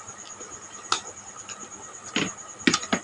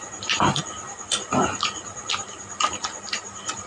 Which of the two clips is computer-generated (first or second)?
second